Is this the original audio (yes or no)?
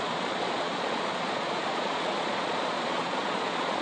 no